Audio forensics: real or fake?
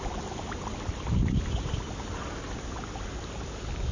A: real